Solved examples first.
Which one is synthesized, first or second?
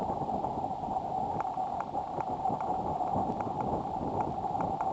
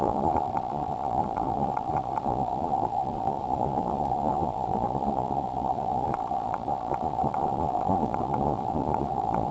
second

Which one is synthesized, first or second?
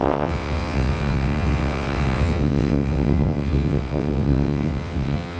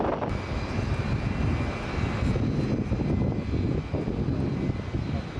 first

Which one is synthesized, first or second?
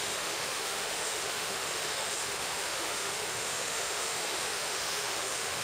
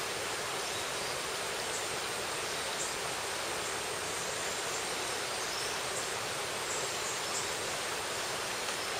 first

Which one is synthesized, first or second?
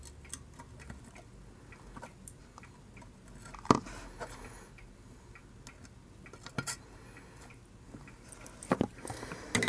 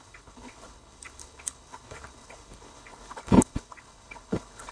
second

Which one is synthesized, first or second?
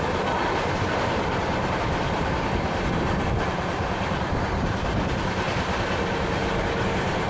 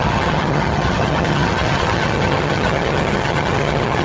second